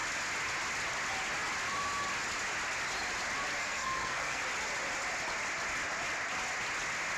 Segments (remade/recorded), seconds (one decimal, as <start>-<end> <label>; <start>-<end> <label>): 0.0-3.6 recorded; 3.6-4.4 remade; 4.4-7.2 recorded